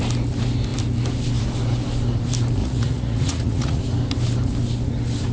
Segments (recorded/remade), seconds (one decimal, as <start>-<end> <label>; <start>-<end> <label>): 0.0-2.6 recorded; 2.6-3.8 remade; 3.8-5.3 recorded